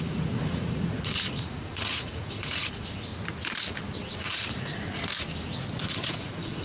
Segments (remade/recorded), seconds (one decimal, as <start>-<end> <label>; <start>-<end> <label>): 0.0-3.1 remade; 3.1-4.0 recorded; 4.0-5.0 remade; 5.0-5.8 recorded; 5.8-6.6 remade